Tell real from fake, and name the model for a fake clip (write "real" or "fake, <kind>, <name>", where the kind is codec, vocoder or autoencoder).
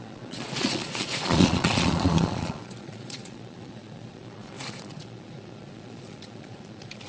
fake, vocoder, Vocos